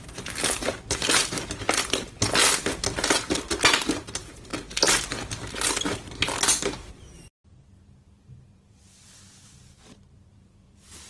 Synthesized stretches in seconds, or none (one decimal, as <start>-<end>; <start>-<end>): 0.0-4.5; 6.9-11.1